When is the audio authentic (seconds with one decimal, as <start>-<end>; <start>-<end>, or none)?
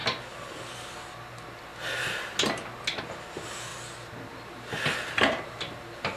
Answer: 0.0-6.2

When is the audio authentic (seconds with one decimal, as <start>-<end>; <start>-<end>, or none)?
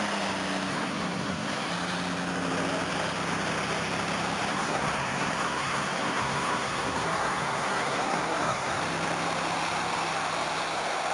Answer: 0.0-0.7; 1.7-4.5; 8.8-11.1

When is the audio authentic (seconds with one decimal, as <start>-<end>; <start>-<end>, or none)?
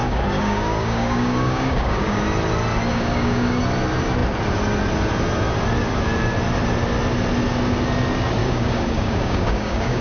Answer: 2.2-2.9; 3.6-8.4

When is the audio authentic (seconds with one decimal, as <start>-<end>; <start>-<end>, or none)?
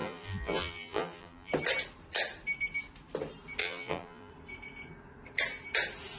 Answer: 1.5-3.6; 4.3-6.2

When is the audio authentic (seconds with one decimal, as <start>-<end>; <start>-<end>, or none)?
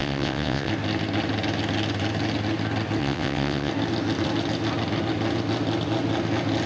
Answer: 0.7-3.0; 3.7-6.7